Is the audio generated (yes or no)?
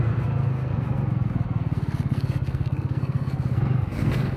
yes